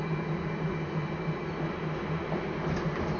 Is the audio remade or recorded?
recorded